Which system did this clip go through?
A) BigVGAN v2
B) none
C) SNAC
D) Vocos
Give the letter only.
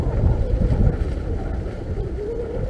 B